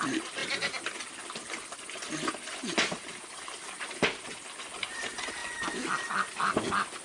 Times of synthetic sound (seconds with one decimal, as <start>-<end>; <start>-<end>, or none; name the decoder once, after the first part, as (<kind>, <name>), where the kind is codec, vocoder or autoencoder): none